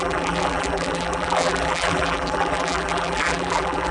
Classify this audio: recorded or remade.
remade